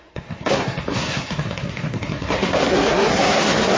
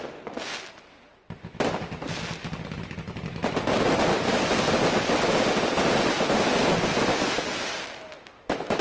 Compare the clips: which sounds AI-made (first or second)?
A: first